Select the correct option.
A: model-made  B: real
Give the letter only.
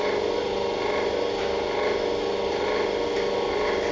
B